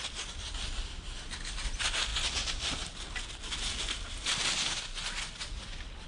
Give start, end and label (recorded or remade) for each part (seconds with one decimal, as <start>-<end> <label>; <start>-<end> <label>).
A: 0.0-6.1 recorded